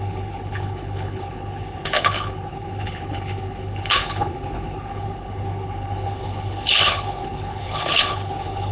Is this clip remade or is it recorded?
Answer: remade